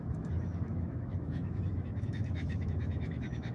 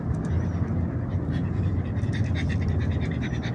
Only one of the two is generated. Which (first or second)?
first